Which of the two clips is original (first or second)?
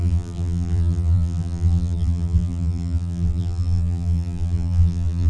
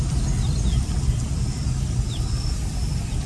second